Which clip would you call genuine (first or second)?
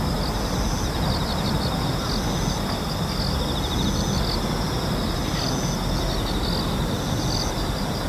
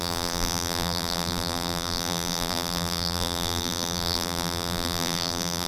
first